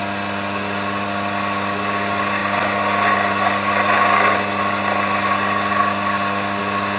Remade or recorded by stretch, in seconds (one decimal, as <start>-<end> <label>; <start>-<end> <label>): 0.0-7.0 recorded